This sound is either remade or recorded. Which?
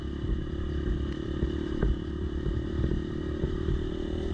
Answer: remade